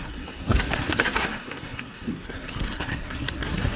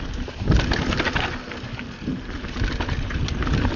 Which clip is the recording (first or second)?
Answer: second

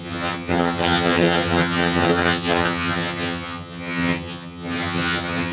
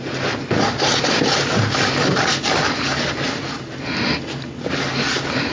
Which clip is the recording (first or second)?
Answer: second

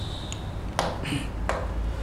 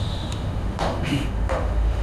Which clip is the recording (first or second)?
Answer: first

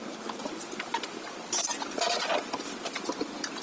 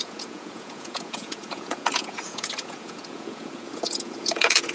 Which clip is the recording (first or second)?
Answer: first